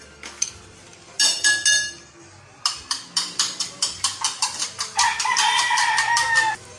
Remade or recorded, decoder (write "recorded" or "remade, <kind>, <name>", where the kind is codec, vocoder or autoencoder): recorded